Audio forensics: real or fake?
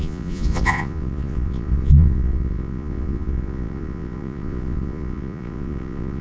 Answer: fake